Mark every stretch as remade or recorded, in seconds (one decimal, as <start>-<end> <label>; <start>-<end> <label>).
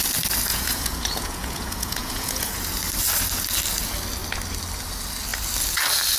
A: 0.0-0.5 recorded; 0.5-2.6 remade; 2.6-6.2 recorded